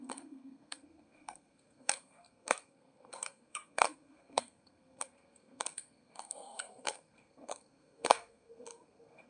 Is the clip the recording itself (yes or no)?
no